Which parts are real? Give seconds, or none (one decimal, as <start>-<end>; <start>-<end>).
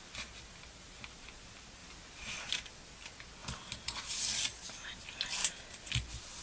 0.0-5.4; 5.9-6.4